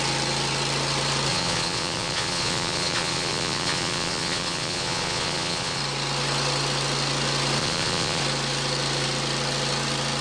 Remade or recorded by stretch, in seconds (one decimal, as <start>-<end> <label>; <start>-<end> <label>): 0.0-1.3 recorded; 1.3-5.8 remade; 5.8-7.6 recorded; 7.6-8.2 remade; 8.2-10.2 recorded